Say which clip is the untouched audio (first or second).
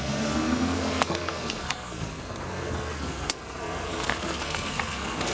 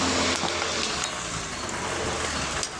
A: second